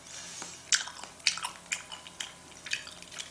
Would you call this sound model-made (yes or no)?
no